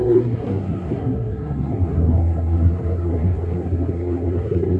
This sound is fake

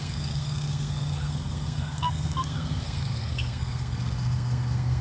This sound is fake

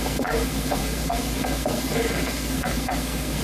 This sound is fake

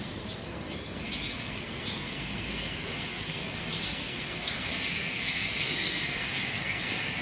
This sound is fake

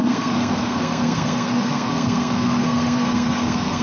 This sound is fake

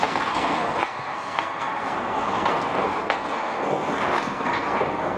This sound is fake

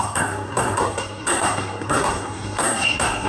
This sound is fake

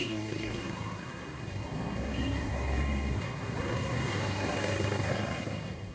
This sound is fake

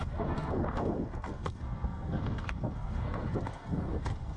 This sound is fake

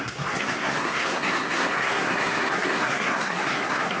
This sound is fake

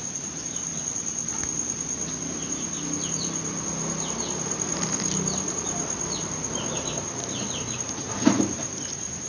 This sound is real